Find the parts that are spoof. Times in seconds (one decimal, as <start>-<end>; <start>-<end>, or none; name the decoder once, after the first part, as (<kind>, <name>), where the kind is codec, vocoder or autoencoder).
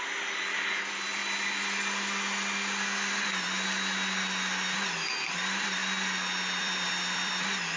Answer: 0.0-1.2 (vocoder, BigVGAN v2); 5.3-5.8; 6.6-7.8